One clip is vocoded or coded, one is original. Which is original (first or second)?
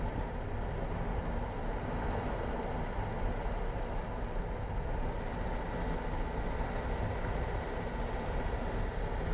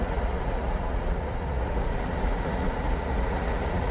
first